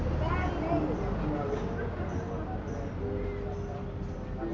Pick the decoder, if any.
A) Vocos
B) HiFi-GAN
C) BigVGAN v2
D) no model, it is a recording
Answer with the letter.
D